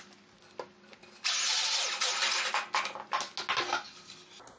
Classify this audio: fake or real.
real